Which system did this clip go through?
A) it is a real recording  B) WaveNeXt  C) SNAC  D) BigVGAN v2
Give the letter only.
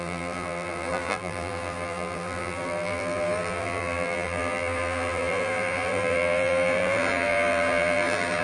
D